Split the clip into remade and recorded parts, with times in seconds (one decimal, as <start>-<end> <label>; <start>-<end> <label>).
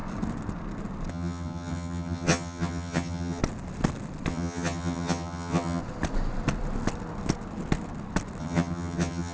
0.0-1.1 recorded; 1.1-3.4 remade; 3.4-4.3 recorded; 4.3-5.8 remade; 5.8-8.4 recorded; 8.4-9.3 remade